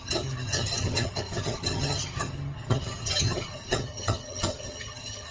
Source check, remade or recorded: remade